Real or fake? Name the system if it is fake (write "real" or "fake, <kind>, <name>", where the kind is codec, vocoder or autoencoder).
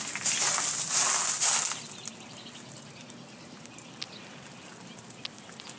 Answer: real